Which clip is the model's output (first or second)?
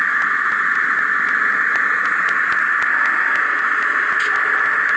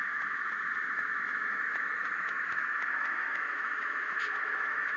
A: second